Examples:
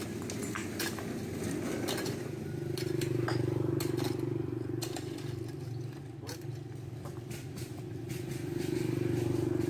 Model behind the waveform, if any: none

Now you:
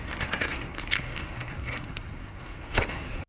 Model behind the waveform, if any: codec, SNAC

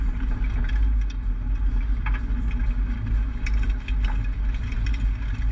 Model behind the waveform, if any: none